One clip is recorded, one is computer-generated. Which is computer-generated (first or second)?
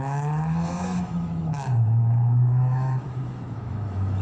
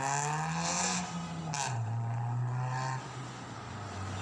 first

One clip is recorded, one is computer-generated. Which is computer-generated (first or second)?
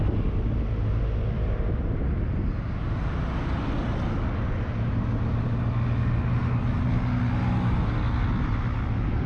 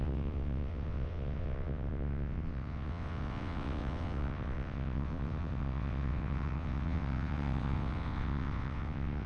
second